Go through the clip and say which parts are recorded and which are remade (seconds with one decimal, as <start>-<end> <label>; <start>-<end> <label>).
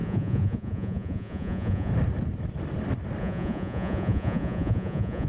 0.0-1.9 remade; 1.9-3.2 recorded; 3.2-5.3 remade